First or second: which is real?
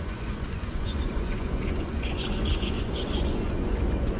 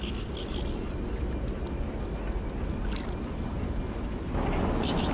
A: second